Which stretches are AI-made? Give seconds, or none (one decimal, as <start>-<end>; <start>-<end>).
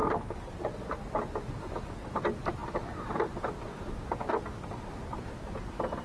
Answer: none